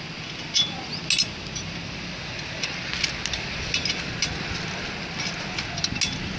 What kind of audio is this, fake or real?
real